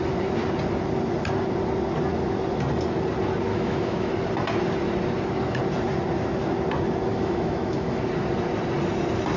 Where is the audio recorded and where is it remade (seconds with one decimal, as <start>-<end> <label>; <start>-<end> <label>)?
0.0-3.5 recorded; 3.5-4.1 remade; 4.1-7.1 recorded; 7.1-8.0 remade; 8.0-9.4 recorded